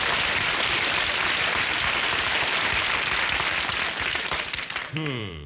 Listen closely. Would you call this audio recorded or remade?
remade